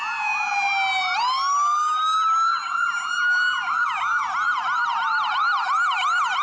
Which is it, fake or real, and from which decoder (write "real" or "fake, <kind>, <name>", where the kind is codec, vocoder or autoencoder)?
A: real